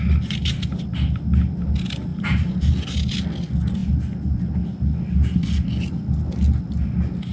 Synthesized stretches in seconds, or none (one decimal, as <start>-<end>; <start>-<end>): 2.1-2.7